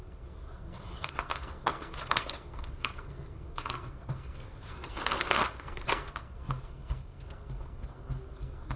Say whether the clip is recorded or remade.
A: remade